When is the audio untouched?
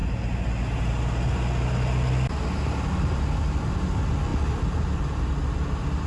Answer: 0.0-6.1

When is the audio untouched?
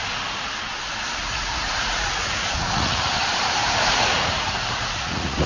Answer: 0.0-1.2; 3.1-3.6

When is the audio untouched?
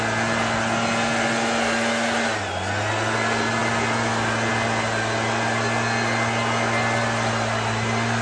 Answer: 0.0-8.2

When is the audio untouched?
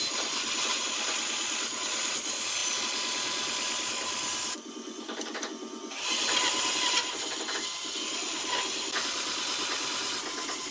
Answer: 0.0-10.7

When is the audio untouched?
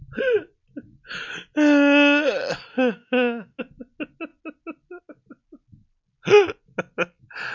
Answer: 0.0-2.7; 3.6-7.5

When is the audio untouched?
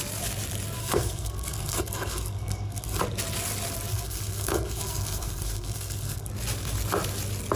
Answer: 0.0-0.8; 3.0-3.9; 6.3-7.6